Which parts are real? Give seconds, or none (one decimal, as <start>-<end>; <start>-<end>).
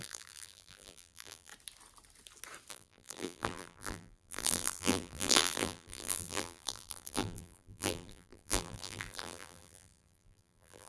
1.5-2.7